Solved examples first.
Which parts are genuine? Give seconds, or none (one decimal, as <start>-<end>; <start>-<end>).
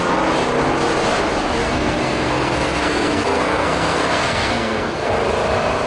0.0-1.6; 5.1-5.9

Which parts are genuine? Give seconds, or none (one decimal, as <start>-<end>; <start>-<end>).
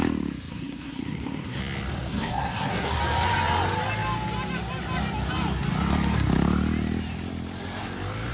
0.0-0.5; 1.6-2.1; 3.0-8.3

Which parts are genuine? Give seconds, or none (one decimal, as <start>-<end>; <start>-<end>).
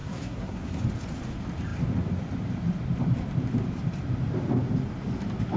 0.8-5.6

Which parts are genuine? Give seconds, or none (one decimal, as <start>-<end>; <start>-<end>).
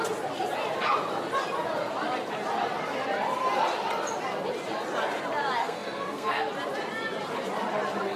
0.0-5.6; 6.5-8.2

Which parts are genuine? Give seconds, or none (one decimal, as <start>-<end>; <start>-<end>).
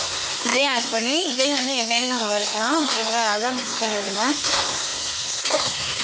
none